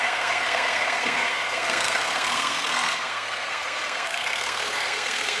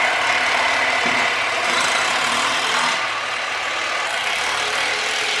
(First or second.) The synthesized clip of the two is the first